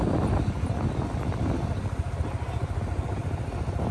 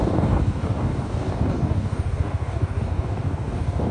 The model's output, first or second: second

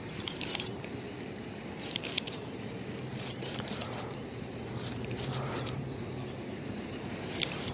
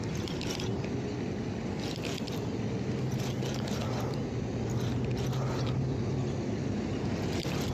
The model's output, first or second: first